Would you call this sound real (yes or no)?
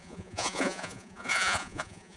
no